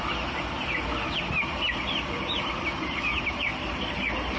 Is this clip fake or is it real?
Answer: real